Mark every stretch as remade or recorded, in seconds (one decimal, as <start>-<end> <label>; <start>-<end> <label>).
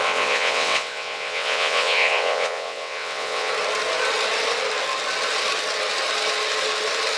0.0-3.5 remade; 3.5-7.2 recorded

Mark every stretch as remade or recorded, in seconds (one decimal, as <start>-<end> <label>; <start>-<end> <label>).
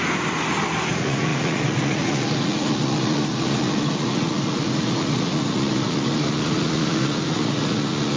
0.0-0.9 recorded; 0.9-8.2 remade